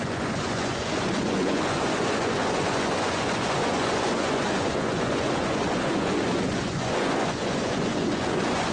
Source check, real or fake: fake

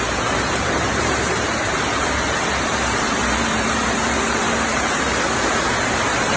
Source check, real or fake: fake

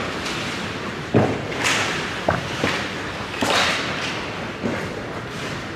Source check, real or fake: real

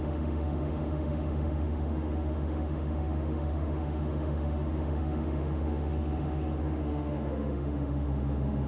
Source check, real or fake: fake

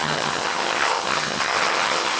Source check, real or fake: fake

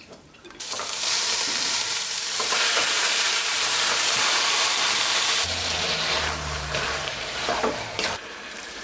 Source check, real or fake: fake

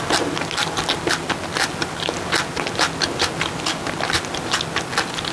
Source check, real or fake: real